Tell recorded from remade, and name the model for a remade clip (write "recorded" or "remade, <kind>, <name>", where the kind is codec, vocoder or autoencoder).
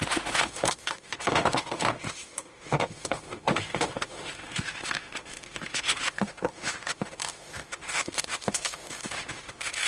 remade, autoencoder, DAC-VAE